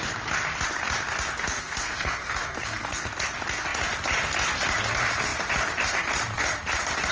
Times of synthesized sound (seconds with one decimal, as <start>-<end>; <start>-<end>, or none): 1.6-3.1